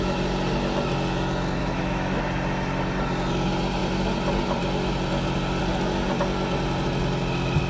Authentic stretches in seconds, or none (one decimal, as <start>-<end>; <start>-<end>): 0.0-1.6; 2.2-7.7